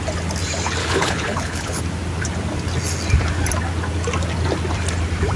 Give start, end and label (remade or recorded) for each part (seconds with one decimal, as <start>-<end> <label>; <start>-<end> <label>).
0.0-0.8 recorded; 0.8-1.8 remade; 1.8-5.4 recorded